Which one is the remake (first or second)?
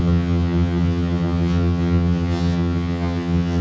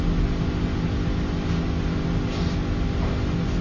first